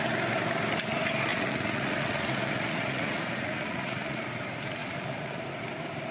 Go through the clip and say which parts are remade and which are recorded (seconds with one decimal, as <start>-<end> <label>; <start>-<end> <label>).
0.0-1.3 recorded; 1.3-4.2 remade; 4.2-4.8 recorded; 4.8-5.4 remade; 5.4-6.1 recorded